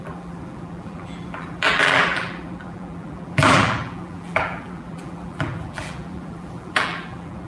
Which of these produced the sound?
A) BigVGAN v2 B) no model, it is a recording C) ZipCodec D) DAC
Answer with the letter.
A